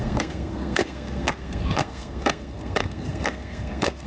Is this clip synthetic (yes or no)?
yes